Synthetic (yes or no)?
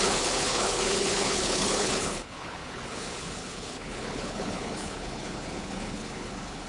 yes